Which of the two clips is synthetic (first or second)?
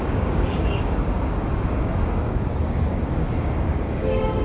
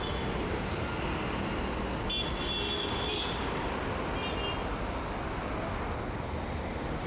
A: first